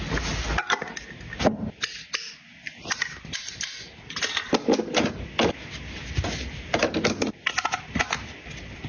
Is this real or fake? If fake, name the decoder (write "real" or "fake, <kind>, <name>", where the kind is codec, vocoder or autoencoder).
real